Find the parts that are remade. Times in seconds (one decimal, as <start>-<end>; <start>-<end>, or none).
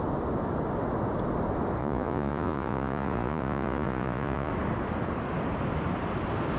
1.8-4.5